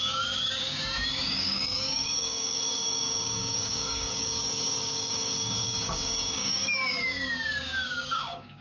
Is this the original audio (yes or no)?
no